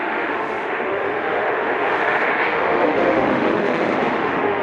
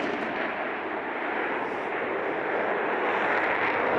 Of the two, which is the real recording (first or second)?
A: second